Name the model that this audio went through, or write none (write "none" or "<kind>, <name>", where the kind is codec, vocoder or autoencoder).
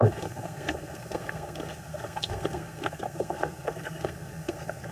codec, SNAC